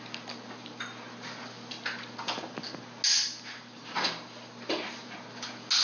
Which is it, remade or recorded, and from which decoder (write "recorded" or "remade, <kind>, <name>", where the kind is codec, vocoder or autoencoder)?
recorded